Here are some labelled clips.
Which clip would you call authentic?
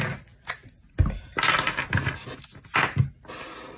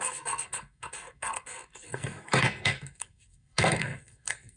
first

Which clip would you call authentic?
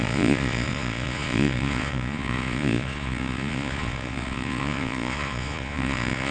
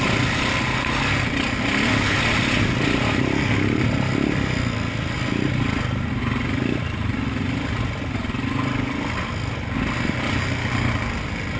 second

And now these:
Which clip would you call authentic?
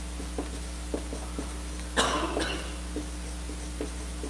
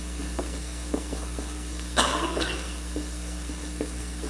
first